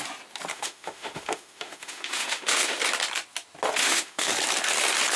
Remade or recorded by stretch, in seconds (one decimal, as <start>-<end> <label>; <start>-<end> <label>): 0.0-0.5 recorded; 0.5-2.8 remade; 2.8-3.8 recorded; 3.8-4.3 remade; 4.3-5.2 recorded